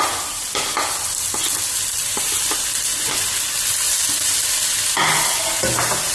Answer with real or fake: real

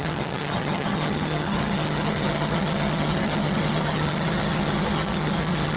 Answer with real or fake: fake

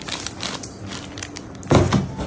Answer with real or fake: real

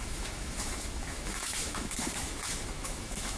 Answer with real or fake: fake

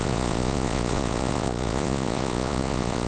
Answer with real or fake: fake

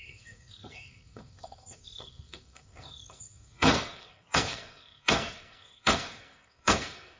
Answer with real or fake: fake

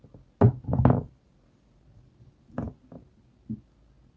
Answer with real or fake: real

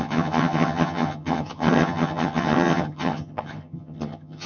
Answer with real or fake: fake